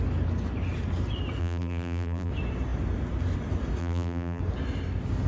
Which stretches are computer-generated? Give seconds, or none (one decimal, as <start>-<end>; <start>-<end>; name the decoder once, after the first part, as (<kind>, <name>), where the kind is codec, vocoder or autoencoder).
1.4-2.3 (vocoder, BigVGAN v2); 3.8-4.4